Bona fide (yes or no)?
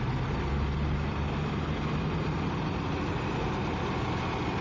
yes